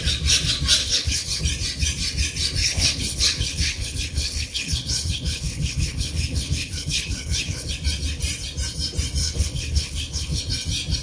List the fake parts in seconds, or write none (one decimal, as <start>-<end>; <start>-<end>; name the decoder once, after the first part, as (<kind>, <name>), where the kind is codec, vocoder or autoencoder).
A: 0.8-1.4 (codec, HILCodec); 2.6-7.7; 9.2-10.4